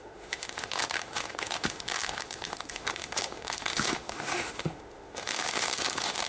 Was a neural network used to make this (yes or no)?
yes